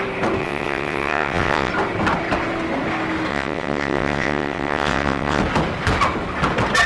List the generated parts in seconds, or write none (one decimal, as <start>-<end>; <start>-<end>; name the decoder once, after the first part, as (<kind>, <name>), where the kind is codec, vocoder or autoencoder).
0.4-1.7 (vocoder, WaveNeXt); 3.3-5.4

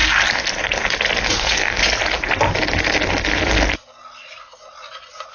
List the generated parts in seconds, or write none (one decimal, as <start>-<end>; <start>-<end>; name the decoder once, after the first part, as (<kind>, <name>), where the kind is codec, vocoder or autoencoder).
1.3-1.8 (codec, SNAC)

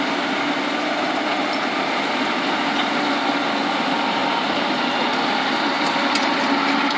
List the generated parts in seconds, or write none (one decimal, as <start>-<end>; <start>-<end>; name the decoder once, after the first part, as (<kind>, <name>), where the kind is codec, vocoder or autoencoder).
none

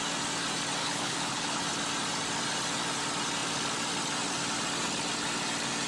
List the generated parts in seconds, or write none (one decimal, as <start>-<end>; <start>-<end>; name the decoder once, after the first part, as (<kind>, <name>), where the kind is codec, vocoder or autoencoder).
0.8-1.6 (codec, HILCodec)